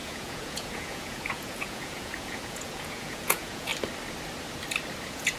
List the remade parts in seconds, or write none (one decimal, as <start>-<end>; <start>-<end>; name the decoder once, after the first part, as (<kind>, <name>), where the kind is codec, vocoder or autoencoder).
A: 0.0-3.7 (vocoder, Vocos); 5.0-5.4